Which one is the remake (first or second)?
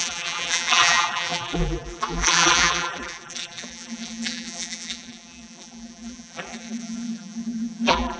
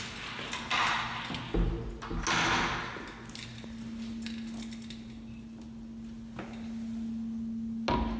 first